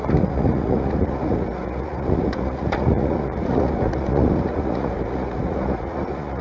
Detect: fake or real fake